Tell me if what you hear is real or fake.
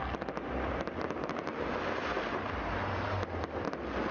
real